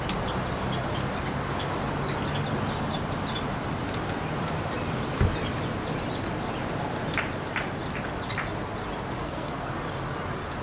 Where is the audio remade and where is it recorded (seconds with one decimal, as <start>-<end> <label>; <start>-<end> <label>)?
0.0-9.2 recorded; 9.2-9.7 remade; 9.7-10.6 recorded